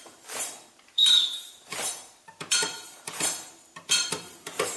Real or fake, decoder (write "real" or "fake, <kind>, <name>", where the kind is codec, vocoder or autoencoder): fake, vocoder, BigVGAN v2